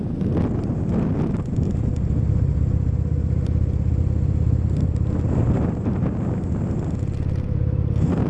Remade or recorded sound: recorded